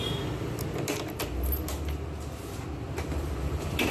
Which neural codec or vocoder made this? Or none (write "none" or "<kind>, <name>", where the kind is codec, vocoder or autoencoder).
none